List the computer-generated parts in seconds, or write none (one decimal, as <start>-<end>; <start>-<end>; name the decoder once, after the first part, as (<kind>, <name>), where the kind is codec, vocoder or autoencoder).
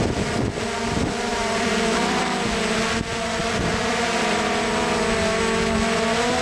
1.3-2.2 (vocoder, BigVGAN v2); 3.4-4.7